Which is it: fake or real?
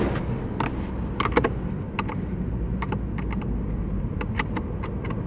real